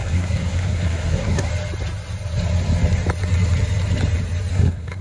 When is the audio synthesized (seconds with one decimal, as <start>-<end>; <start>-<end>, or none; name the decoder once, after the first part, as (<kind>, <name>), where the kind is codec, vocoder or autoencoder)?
0.0-1.5 (codec, SNAC); 4.5-5.0